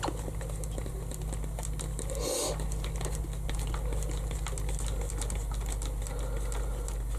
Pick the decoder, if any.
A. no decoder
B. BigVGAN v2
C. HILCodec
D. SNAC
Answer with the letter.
A